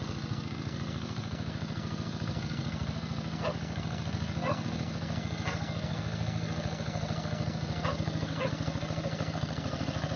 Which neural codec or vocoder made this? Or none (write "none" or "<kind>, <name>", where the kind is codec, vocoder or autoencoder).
codec, SNAC